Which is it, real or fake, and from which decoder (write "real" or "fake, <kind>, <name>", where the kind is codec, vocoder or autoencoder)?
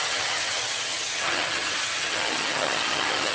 fake, vocoder, HiFi-GAN